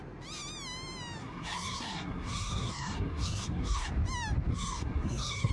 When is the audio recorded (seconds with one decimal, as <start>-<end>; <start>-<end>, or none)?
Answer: 0.0-1.2; 3.9-4.5